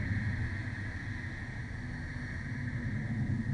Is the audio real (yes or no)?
yes